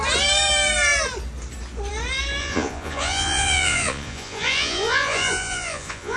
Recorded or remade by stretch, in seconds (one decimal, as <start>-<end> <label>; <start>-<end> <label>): 0.0-2.4 recorded; 2.4-6.2 remade